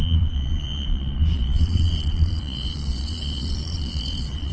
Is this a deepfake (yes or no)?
yes